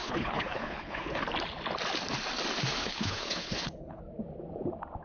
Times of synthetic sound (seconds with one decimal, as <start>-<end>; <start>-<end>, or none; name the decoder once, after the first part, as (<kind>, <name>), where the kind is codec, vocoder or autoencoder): 0.0-1.2 (codec, HILCodec); 2.8-4.0